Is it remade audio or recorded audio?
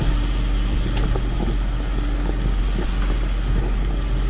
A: recorded